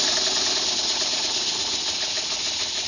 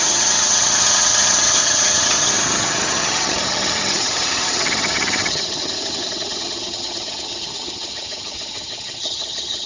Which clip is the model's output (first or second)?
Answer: second